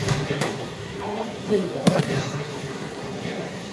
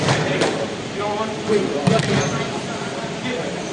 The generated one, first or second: first